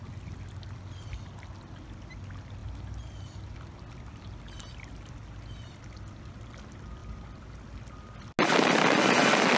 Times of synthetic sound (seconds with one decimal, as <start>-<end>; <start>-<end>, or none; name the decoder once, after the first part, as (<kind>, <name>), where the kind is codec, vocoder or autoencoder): none